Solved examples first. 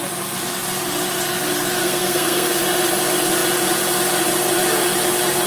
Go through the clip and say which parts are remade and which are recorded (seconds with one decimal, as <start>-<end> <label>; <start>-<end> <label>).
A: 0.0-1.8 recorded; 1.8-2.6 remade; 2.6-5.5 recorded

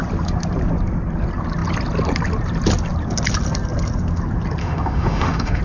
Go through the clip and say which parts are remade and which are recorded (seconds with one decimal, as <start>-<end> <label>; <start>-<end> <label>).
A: 0.0-4.6 recorded; 4.6-5.6 remade

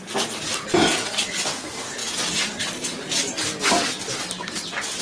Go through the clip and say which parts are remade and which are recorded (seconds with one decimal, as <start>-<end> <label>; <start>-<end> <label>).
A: 0.0-5.0 recorded

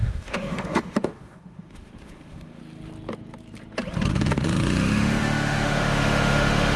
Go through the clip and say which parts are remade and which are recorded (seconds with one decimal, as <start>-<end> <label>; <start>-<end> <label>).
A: 0.0-2.6 remade; 2.6-4.1 recorded; 4.1-6.8 remade

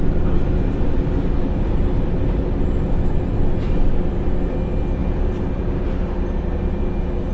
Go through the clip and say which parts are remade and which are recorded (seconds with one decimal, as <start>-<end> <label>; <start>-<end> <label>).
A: 0.0-7.3 recorded

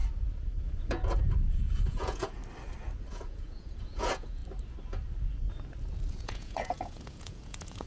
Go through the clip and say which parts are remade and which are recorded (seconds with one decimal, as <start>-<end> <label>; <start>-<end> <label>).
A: 0.0-0.6 recorded; 0.6-2.4 remade; 2.4-3.1 recorded; 3.1-4.4 remade; 4.4-6.1 recorded; 6.1-7.9 remade

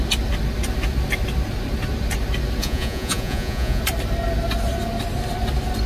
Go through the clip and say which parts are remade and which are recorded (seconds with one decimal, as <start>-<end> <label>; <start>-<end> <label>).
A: 0.0-2.6 recorded; 2.6-3.8 remade; 3.8-5.9 recorded